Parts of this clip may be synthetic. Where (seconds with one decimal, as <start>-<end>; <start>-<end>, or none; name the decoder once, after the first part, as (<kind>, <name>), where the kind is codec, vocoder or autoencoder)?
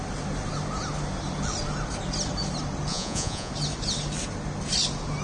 2.9-3.5 (vocoder, Vocos)